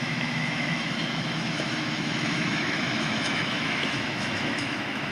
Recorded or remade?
remade